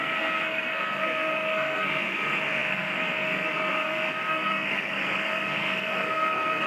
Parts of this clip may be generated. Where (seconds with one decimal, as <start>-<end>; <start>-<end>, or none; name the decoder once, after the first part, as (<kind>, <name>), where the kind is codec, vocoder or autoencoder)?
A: 0.0-6.7 (codec, SNAC)